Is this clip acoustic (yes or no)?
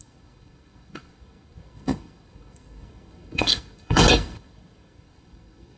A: no